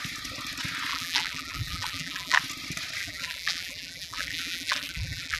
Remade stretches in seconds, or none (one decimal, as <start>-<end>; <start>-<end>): 0.9-2.4; 3.0-5.4